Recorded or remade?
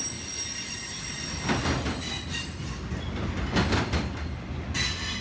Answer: recorded